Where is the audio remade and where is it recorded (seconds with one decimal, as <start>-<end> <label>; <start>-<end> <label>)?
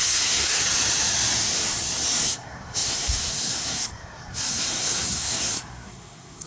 0.0-0.6 remade; 0.6-2.2 recorded; 2.2-6.5 remade